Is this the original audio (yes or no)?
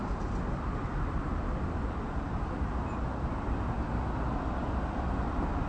yes